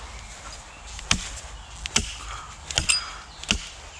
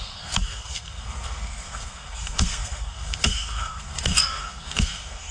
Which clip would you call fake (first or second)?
second